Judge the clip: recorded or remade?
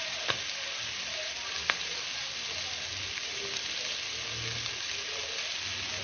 recorded